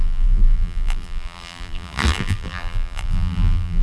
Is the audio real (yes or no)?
no